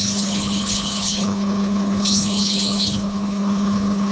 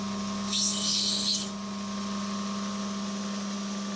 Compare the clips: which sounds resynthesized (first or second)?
first